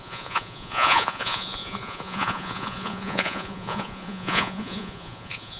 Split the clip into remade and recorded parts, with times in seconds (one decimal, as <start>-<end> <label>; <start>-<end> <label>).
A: 0.0-5.6 remade